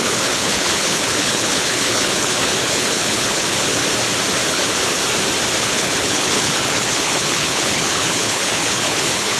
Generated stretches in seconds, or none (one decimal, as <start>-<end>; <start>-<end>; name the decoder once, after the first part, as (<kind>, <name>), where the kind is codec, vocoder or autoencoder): 0.0-3.8 (codec, HILCodec); 4.5-5.0; 5.6-9.4